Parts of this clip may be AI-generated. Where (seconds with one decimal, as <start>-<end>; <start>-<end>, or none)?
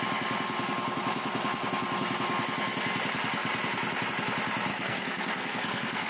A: 4.7-6.1